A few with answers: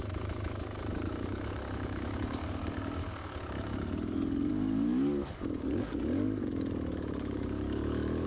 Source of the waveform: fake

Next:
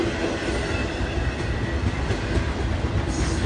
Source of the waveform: real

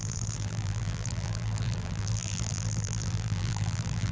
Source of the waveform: fake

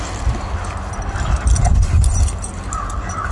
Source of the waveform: real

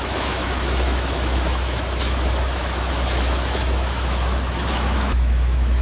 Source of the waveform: fake